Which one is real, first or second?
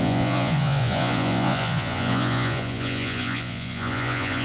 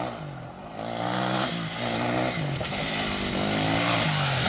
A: second